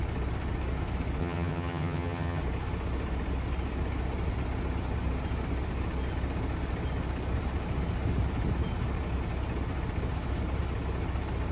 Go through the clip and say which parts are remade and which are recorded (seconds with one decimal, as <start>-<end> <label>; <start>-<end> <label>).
0.0-1.2 recorded; 1.2-2.4 remade; 2.4-11.5 recorded